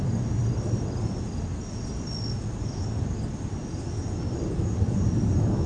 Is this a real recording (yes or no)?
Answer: yes